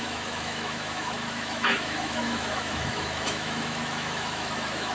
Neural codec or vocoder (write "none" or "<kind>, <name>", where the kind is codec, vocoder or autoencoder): autoencoder, DAC-VAE